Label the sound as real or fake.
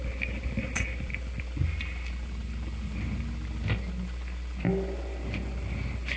real